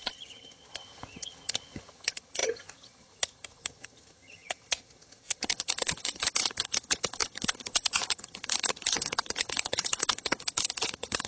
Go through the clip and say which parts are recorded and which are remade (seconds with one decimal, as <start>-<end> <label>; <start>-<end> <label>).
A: 0.0-11.3 remade